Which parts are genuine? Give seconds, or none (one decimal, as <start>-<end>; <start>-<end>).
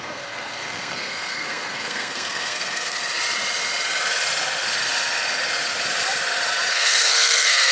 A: 3.0-6.7